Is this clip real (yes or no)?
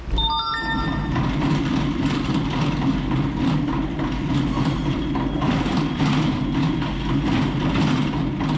yes